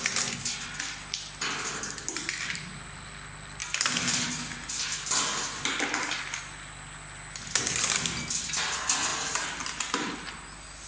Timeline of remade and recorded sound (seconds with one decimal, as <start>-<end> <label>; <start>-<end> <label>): 0.0-10.9 recorded

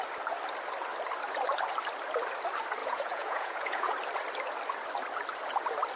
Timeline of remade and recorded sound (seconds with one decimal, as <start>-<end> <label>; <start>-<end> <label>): 0.0-2.8 recorded; 2.8-3.9 remade; 3.9-6.0 recorded

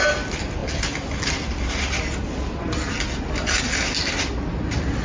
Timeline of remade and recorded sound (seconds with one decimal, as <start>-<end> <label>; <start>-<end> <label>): 0.0-5.0 recorded

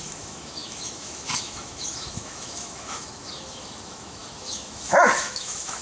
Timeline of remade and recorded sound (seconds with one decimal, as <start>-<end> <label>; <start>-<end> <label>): 0.0-5.8 remade

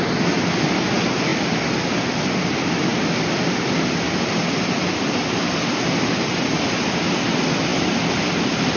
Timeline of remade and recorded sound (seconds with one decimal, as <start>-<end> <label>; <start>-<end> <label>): 0.0-8.8 recorded